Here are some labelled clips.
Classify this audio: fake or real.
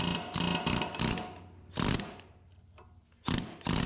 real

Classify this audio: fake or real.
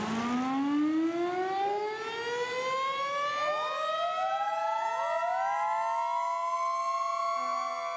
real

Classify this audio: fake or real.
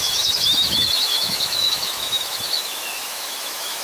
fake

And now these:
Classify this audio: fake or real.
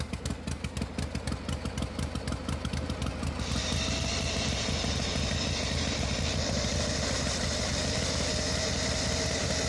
real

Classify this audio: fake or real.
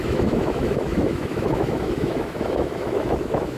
fake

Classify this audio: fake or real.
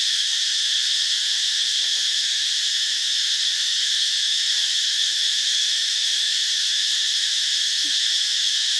fake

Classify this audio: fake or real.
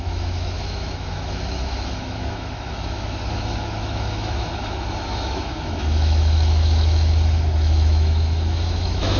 fake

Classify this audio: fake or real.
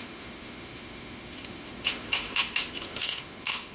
fake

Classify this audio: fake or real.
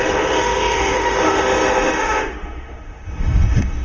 fake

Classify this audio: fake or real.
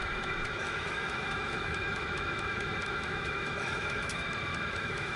fake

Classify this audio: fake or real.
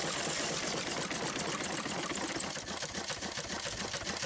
real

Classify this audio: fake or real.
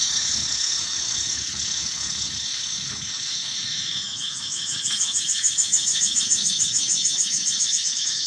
fake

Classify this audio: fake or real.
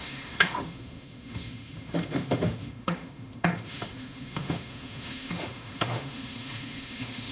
fake